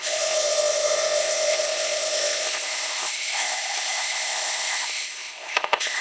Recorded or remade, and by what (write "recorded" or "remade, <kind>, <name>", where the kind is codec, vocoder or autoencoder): remade, codec, ZipCodec